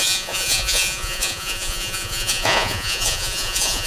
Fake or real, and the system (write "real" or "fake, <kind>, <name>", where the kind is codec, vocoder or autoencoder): fake, vocoder, Vocos